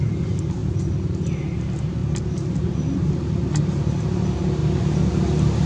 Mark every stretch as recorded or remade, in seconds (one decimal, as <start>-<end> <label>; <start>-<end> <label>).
0.0-2.0 recorded; 2.0-3.5 remade; 3.5-5.7 recorded

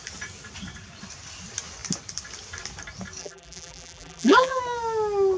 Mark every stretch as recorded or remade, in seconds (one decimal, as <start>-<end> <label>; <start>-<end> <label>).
0.0-3.2 recorded; 3.2-4.6 remade; 4.6-5.4 recorded

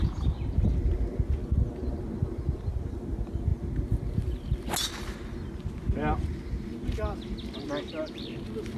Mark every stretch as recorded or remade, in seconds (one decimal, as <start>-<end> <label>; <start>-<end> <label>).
0.0-8.8 recorded

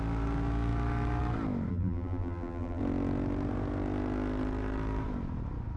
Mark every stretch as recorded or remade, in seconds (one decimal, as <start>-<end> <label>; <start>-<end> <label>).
0.0-1.7 recorded; 1.7-2.8 remade; 2.8-5.8 recorded